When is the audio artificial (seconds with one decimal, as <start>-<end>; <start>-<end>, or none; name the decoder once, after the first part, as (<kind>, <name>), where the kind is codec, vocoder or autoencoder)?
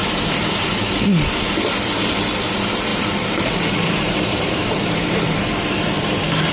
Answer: 0.0-0.8 (vocoder, BigVGAN v2); 2.9-6.5